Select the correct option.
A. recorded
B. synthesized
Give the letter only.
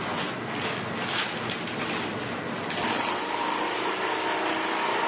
A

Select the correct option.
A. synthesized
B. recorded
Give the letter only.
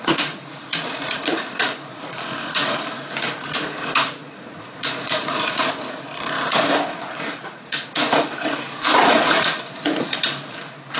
A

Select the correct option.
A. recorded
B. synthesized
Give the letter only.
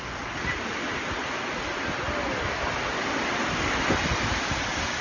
A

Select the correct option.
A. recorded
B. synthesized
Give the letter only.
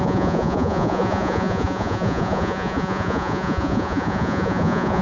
B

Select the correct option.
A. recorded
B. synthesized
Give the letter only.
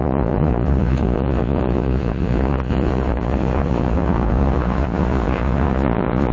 B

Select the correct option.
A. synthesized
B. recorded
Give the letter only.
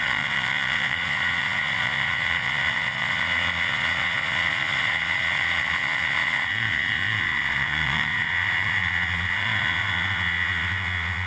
A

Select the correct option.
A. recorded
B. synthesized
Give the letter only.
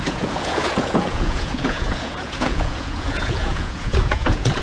B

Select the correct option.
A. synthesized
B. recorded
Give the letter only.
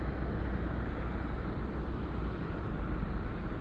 B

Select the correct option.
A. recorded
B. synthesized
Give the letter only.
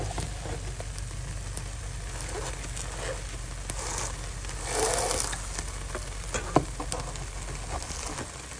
A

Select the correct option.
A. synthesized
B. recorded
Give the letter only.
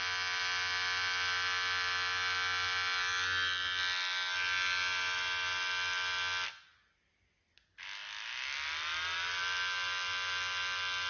B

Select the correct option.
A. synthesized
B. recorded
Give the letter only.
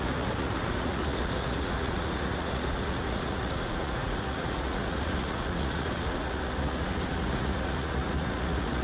A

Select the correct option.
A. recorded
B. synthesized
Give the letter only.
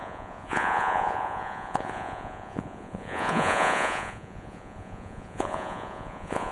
B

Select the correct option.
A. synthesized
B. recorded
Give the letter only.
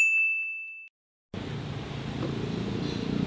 B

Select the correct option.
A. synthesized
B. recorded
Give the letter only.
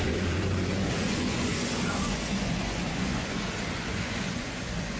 A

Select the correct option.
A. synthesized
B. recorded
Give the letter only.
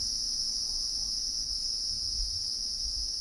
A